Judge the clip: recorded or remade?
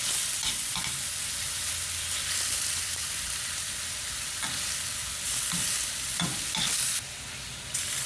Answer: remade